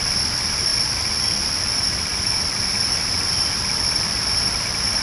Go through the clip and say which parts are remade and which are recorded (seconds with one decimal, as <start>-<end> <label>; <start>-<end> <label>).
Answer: 0.0-0.7 remade; 0.7-1.6 recorded; 1.6-2.1 remade; 2.1-3.1 recorded; 3.1-5.0 remade